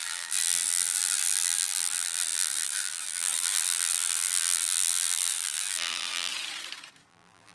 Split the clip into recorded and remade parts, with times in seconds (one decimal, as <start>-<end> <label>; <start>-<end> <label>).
0.0-6.3 remade; 6.3-7.1 recorded; 7.1-7.5 remade